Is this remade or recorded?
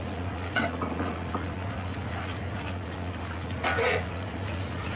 remade